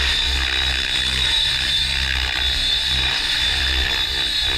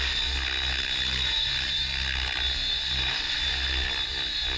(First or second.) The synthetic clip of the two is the first